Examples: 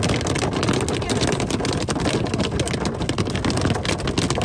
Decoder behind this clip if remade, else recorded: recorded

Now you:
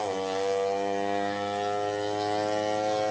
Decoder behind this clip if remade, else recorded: recorded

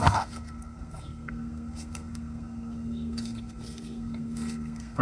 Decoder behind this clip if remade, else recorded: remade, codec, SNAC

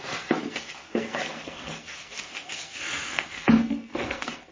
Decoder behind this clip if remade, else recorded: remade, codec, SNAC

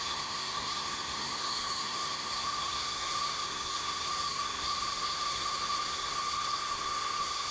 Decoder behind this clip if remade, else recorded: remade, codec, SNAC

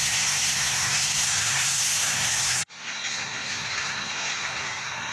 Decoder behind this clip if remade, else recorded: remade, codec, SNAC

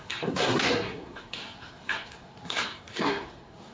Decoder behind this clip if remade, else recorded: remade, codec, SNAC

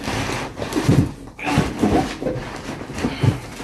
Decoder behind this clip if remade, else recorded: recorded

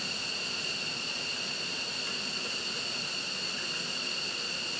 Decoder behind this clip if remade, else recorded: recorded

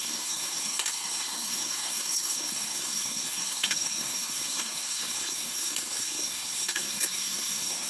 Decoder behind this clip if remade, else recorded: remade, codec, SNAC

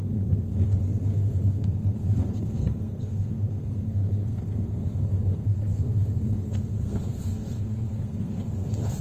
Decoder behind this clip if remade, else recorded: remade, codec, SNAC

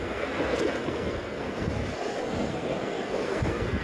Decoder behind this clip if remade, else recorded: remade, codec, SNAC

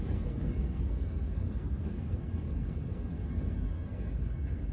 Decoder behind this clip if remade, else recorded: remade, codec, SNAC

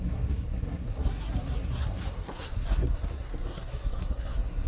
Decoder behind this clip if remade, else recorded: remade, codec, SNAC